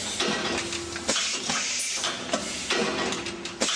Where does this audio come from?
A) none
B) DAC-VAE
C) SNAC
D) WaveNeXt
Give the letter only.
A